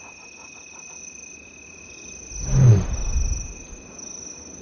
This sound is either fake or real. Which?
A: real